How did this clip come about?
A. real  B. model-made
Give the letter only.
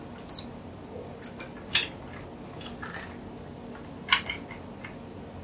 A